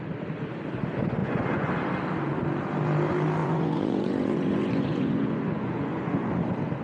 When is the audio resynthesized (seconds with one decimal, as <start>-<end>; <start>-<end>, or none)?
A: 1.2-1.7; 3.4-6.3